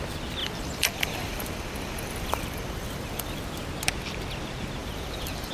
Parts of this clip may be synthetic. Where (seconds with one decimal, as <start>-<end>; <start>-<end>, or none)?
0.4-3.4; 4.8-5.5